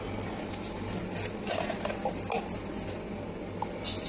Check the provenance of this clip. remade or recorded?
recorded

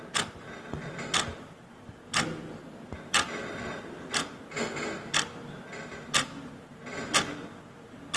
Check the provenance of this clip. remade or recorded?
recorded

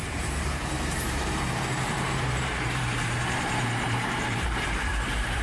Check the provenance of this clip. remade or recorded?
remade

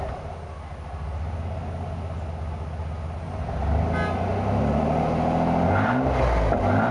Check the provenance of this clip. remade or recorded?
recorded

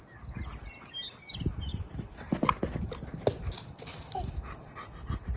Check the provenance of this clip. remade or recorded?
recorded